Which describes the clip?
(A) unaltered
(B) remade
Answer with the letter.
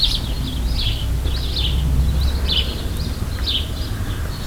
A